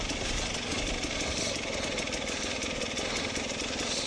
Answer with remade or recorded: recorded